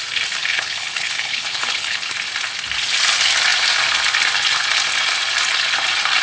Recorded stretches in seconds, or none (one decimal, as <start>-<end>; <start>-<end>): 0.0-0.4; 2.1-6.2